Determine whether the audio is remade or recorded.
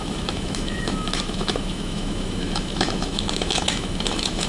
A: remade